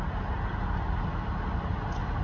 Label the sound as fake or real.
real